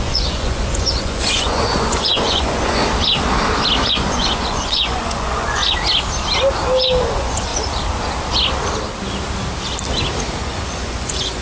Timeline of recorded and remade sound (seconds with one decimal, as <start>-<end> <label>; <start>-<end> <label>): 0.0-2.8 remade; 2.8-3.9 recorded; 3.9-5.6 remade; 5.6-7.0 recorded; 7.0-7.5 remade; 7.5-10.4 recorded; 10.4-11.4 remade